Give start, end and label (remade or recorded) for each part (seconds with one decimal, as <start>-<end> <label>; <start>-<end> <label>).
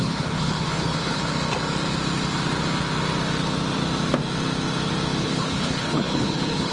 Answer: 0.0-1.2 remade; 1.2-5.2 recorded; 5.2-6.7 remade